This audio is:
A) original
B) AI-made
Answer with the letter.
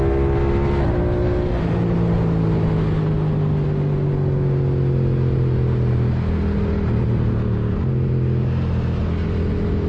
A